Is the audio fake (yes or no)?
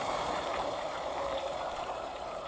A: yes